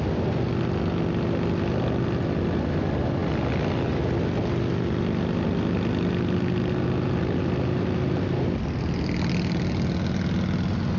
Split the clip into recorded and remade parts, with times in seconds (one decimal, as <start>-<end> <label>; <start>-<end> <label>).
0.0-11.0 recorded